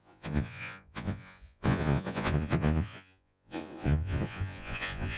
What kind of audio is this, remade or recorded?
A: remade